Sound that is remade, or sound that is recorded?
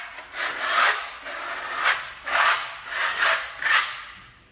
recorded